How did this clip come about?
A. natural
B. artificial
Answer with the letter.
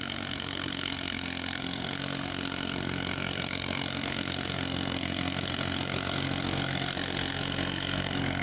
B